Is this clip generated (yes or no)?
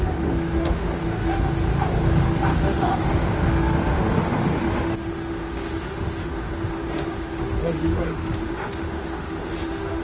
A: yes